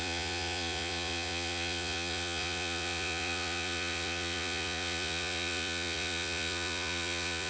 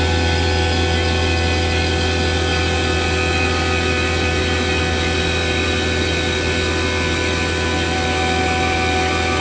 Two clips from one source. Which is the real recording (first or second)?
second